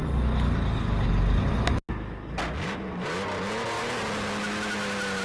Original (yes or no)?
yes